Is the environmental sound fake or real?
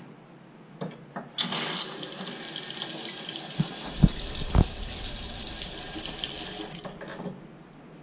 real